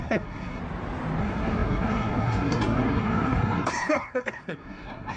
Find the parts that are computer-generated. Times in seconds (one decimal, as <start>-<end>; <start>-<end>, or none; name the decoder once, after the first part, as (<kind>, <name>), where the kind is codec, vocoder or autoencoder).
0.0-0.6 (codec, SNAC); 1.2-5.2